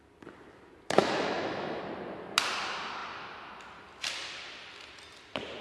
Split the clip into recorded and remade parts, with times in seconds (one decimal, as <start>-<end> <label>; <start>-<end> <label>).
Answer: 0.0-1.0 recorded; 1.0-1.8 remade; 1.8-5.6 recorded